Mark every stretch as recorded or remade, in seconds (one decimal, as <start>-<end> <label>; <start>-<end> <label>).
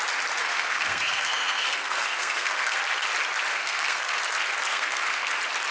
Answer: 0.0-0.4 recorded; 0.4-2.8 remade; 2.8-3.5 recorded; 3.5-4.2 remade; 4.2-4.7 recorded; 4.7-5.3 remade; 5.3-5.7 recorded